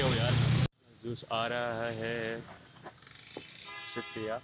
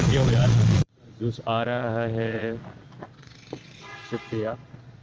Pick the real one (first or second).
first